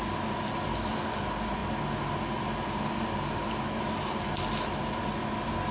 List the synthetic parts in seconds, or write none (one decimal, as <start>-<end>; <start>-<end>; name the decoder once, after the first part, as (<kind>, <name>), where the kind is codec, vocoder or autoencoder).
none